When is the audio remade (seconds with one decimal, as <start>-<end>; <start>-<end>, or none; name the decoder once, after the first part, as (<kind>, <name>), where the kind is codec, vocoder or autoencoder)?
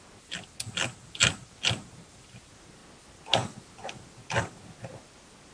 none